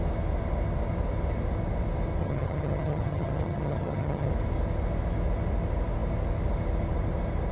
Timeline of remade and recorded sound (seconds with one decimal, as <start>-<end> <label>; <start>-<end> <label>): 0.0-2.2 recorded; 2.2-4.3 remade; 4.3-7.5 recorded